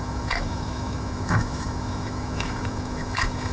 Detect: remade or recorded remade